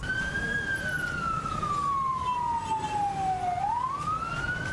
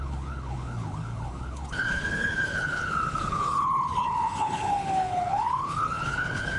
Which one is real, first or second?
first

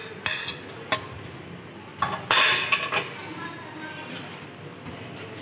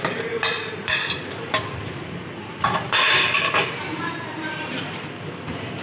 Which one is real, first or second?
first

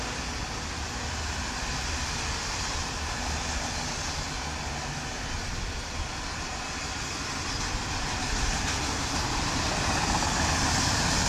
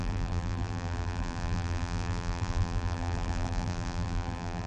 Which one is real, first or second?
first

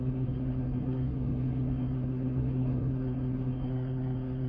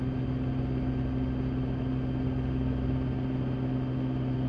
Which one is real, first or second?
second